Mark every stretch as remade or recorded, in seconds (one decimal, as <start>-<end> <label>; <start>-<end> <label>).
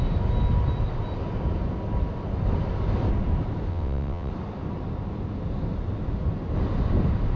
0.0-3.7 recorded; 3.7-4.3 remade; 4.3-7.4 recorded